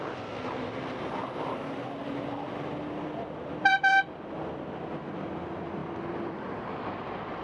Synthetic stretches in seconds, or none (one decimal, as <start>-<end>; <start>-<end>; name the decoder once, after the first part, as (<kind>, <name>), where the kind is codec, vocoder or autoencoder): 0.0-7.4 (vocoder, BigVGAN v2)